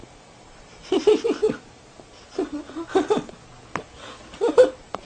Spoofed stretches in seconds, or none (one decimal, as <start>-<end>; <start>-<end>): 0.0-1.4; 4.5-5.1

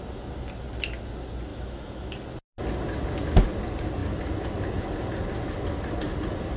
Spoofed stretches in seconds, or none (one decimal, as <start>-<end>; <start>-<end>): 1.5-2.1

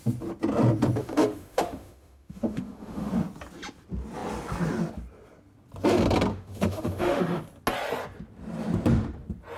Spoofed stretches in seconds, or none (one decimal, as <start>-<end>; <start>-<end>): 1.0-3.1; 6.3-7.2

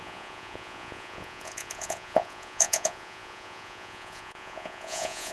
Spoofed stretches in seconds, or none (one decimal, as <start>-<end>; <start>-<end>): 0.0-5.3

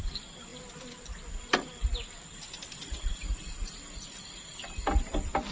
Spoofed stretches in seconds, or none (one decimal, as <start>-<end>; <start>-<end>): none